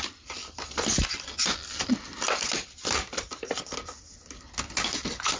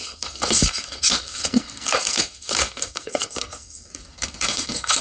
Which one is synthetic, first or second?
second